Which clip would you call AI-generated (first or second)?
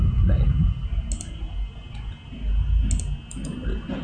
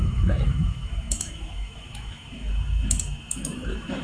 second